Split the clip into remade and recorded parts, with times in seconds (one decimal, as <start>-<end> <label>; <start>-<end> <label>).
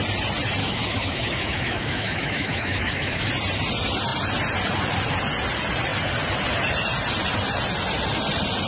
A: 0.0-0.6 recorded; 0.6-3.3 remade; 3.3-8.7 recorded